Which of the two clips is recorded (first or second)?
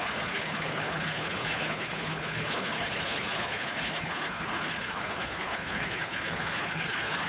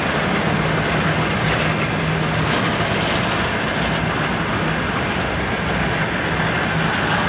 second